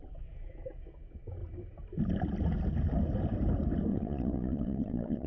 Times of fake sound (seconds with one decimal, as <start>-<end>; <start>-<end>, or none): 3.9-5.3